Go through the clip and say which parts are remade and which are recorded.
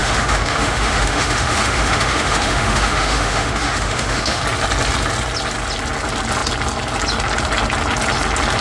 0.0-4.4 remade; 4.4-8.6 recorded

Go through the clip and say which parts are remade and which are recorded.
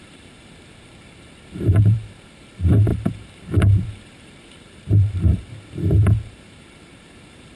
0.0-7.6 remade